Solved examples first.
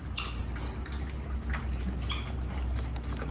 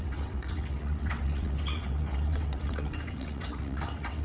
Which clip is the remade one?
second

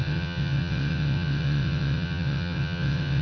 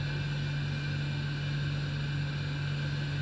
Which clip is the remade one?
first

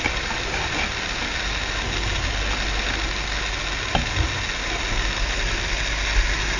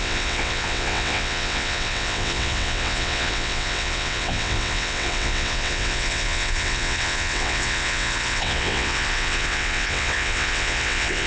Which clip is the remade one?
second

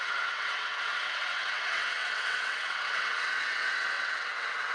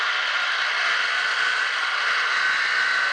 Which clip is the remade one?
first